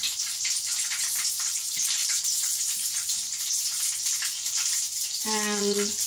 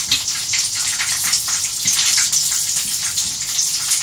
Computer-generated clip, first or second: first